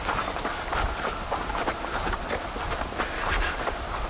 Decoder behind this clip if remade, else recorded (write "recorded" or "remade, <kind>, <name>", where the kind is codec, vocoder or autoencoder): recorded